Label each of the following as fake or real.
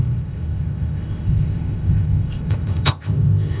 fake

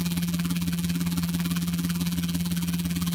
fake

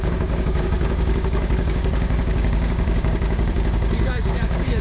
fake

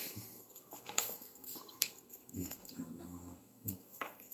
fake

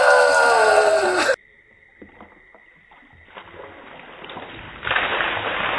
real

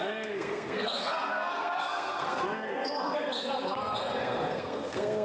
fake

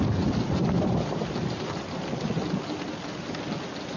real